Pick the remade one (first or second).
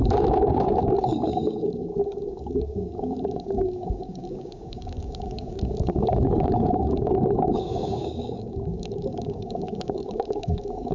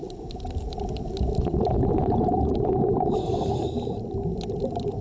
first